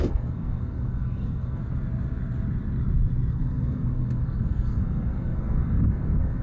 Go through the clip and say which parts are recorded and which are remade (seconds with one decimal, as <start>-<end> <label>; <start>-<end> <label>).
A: 0.0-1.6 remade; 1.6-3.3 recorded; 3.3-6.4 remade